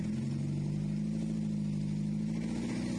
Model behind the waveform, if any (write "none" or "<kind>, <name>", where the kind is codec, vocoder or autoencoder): none